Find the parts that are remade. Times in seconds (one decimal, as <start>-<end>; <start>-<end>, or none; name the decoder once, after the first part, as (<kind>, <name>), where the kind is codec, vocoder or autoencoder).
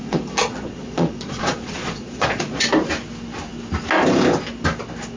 0.0-2.6 (vocoder, Vocos)